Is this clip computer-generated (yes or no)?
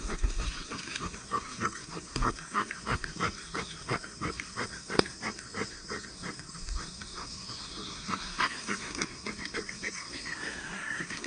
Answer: yes